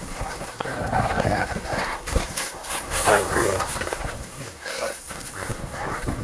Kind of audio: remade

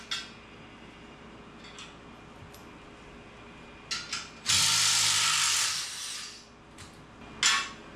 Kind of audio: recorded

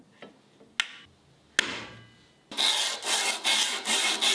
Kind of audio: recorded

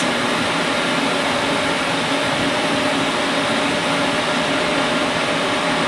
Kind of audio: recorded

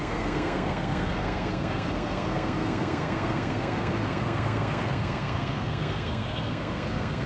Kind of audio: remade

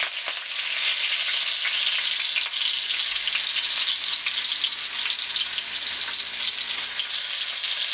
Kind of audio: recorded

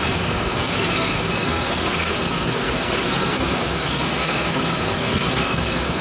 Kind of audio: remade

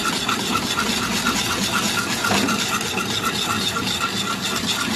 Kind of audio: recorded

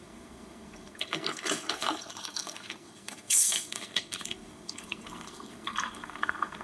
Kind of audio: remade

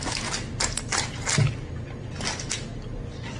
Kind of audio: recorded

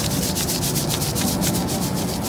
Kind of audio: recorded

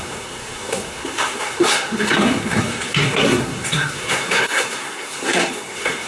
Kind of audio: remade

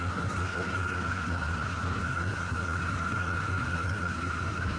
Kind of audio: remade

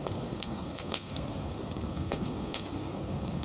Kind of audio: remade